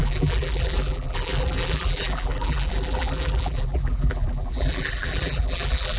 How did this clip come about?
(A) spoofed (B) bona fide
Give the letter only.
A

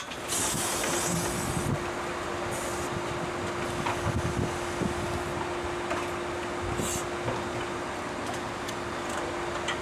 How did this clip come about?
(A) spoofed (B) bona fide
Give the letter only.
B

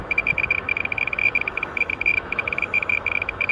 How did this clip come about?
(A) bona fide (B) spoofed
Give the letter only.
B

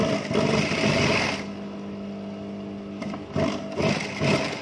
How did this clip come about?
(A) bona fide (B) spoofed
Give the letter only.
A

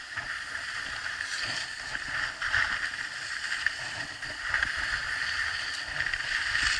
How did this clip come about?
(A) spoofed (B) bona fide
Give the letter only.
B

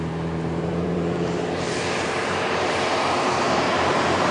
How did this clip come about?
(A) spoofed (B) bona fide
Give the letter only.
A